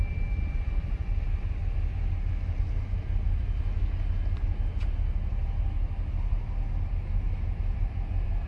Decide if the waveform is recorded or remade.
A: recorded